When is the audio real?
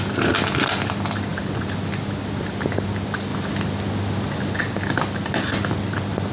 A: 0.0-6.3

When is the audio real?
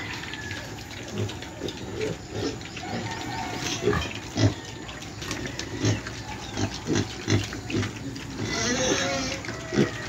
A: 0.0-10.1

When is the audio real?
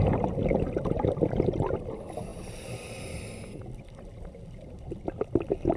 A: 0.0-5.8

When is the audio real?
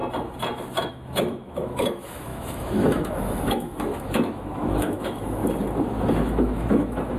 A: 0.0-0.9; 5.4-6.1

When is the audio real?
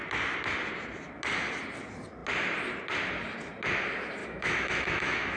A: 0.0-4.2